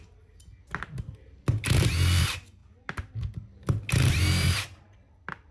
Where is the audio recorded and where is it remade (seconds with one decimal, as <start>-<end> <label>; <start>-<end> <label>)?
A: 0.0-5.5 recorded